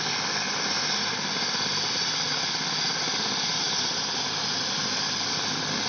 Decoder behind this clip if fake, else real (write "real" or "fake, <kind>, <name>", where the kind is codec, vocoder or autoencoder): fake, vocoder, BigVGAN v2